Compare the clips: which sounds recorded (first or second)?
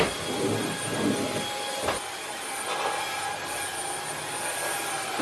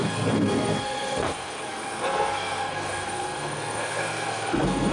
first